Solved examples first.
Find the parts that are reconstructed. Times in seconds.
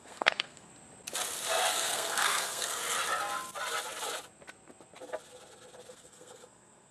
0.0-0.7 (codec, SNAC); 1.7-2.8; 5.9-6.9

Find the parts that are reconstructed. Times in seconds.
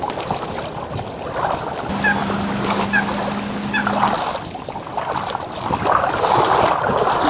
none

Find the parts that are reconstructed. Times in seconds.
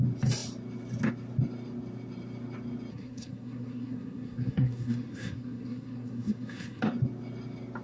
2.9-6.8 (codec, SNAC)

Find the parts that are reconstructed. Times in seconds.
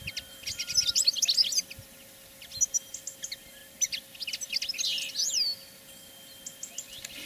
none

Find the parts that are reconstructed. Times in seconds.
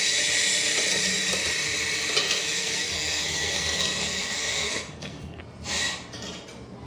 2.2-5.4 (codec, SNAC)